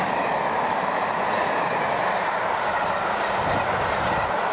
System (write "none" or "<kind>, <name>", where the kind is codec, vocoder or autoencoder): none